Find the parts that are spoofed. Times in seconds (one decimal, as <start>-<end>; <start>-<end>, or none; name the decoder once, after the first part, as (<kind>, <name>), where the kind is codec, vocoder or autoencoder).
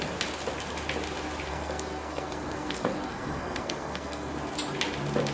1.5-4.3 (codec, SNAC)